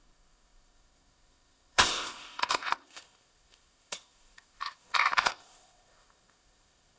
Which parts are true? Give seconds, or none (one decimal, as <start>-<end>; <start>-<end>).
none